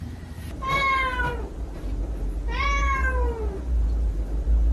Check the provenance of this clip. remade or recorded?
remade